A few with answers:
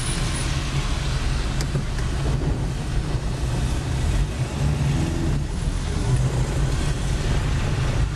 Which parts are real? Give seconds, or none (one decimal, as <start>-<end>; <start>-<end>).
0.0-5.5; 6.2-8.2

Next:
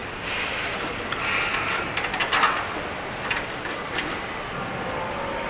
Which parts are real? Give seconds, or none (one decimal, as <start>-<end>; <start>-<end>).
1.5-2.2; 4.5-5.5

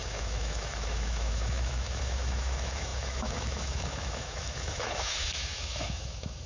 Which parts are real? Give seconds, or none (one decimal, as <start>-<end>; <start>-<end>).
none

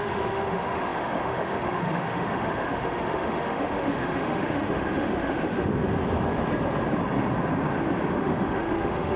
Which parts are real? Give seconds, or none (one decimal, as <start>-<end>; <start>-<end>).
5.7-8.2

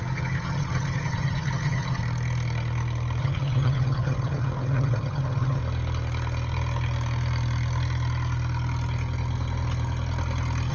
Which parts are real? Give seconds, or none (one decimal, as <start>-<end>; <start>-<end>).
2.0-3.2; 5.6-10.7

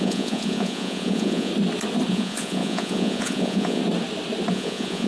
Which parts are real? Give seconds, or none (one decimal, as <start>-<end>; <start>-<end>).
1.5-2.1; 3.8-4.5

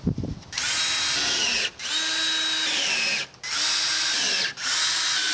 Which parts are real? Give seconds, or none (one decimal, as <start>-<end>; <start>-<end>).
0.0-5.3

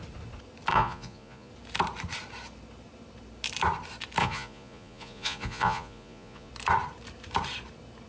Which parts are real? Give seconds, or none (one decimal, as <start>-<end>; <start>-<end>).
0.0-0.7; 1.5-4.2; 6.5-8.1